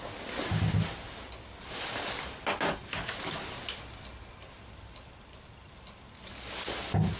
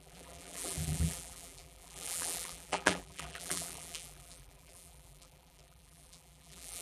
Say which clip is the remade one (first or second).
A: second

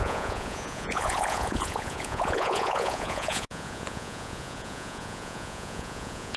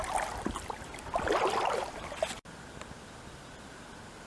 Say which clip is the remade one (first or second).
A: first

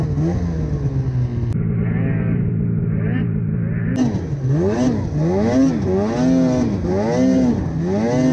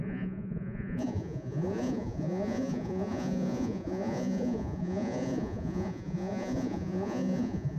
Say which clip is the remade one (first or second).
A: second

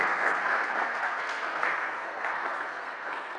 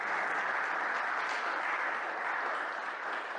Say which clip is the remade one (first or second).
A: first